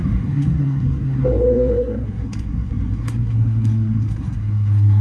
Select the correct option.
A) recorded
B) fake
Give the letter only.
B